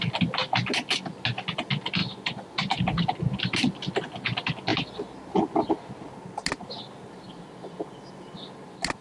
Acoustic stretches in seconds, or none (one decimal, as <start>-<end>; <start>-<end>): 0.0-9.0